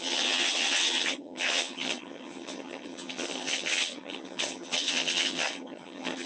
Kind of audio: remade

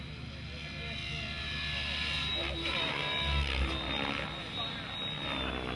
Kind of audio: recorded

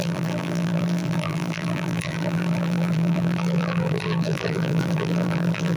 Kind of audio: remade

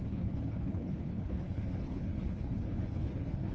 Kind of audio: remade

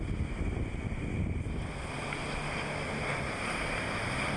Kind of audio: recorded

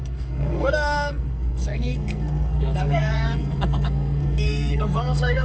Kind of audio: remade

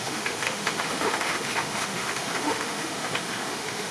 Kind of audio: remade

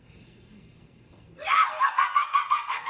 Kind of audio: remade